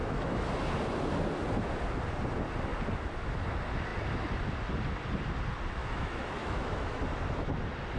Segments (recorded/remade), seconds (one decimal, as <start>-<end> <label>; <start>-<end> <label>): 0.0-0.6 remade; 0.6-5.8 recorded; 5.8-7.0 remade; 7.0-8.0 recorded